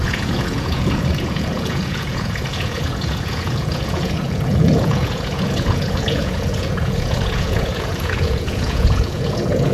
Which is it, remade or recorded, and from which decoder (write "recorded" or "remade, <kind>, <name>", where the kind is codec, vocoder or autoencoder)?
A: remade, vocoder, Vocos